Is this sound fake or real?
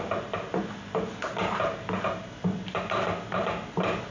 real